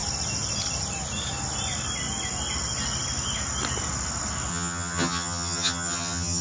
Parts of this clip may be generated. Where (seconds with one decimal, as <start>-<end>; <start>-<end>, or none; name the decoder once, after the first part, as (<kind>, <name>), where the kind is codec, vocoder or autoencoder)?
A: 4.5-6.4 (vocoder, HiFi-GAN)